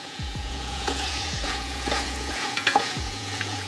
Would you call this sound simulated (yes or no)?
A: yes